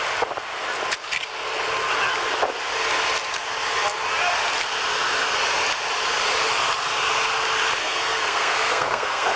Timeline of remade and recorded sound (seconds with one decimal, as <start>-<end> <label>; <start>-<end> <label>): 0.0-7.8 recorded; 7.8-9.4 remade